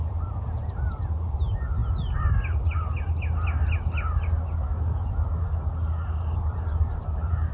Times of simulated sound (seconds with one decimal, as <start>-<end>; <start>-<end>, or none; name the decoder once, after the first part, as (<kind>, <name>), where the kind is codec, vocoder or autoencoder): 0.0-1.8 (vocoder, BigVGAN v2); 6.3-7.5